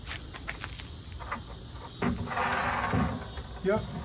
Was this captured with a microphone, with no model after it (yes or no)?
yes